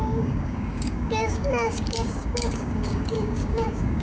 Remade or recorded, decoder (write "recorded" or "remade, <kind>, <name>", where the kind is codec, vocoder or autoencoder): remade, codec, DAC